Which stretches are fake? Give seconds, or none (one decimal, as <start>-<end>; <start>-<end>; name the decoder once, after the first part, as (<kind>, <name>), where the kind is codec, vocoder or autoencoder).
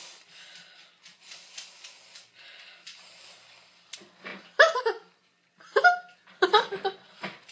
none